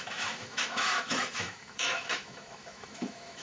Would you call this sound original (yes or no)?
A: no